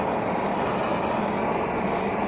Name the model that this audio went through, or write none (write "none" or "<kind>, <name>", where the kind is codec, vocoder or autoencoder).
none